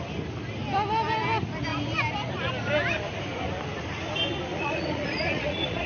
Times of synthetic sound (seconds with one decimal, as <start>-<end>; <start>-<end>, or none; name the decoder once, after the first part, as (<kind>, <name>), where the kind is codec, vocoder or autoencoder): 4.5-5.9 (vocoder, Vocos)